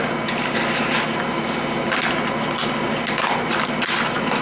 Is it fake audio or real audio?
real